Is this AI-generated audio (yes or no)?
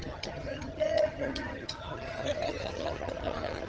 yes